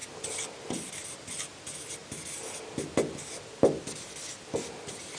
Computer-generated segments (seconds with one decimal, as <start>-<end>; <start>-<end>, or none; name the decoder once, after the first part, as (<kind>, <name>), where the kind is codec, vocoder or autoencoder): none